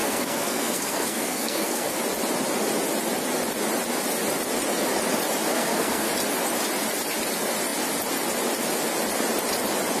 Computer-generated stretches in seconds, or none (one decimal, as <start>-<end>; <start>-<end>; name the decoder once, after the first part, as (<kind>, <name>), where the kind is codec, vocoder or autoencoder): 0.0-2.0 (codec, SNAC); 5.5-6.1